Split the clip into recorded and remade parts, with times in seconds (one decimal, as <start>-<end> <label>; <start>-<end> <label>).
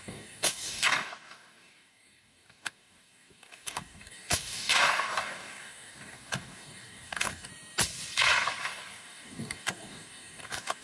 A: 0.0-7.5 remade; 7.5-8.6 recorded; 8.6-10.8 remade